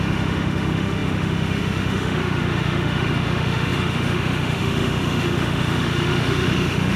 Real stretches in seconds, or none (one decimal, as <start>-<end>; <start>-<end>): none